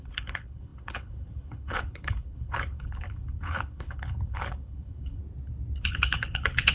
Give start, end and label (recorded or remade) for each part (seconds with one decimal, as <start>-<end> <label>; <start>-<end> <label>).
0.0-5.2 remade; 5.2-5.8 recorded; 5.8-6.7 remade